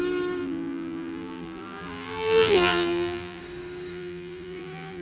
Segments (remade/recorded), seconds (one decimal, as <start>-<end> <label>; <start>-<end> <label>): 0.0-0.4 recorded; 0.4-3.4 remade; 3.4-3.9 recorded; 3.9-5.0 remade

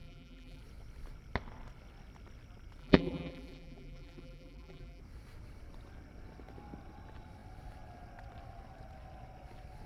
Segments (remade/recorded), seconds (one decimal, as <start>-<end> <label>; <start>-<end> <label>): 0.0-0.6 remade; 0.6-2.8 recorded; 2.8-5.0 remade; 5.0-9.9 recorded

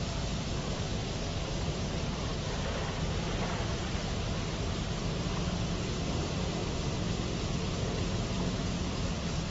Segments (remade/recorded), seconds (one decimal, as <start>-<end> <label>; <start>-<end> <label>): 0.0-2.3 remade; 2.3-5.7 recorded; 5.7-9.5 remade

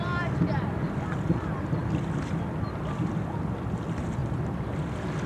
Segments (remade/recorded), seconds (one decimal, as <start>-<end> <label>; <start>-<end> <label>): 0.0-4.2 recorded; 4.2-5.3 remade

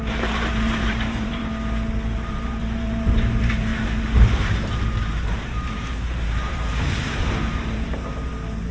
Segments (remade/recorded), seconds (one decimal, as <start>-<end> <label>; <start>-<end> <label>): 0.0-1.4 remade; 1.4-2.2 recorded; 2.2-8.7 remade

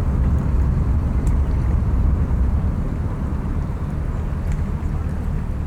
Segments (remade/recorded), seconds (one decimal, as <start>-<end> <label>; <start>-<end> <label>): 0.0-1.0 recorded; 1.0-3.8 remade; 3.8-5.7 recorded